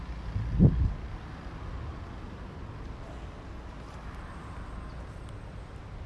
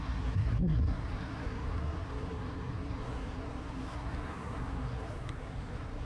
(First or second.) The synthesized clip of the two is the second